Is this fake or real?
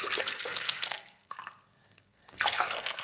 fake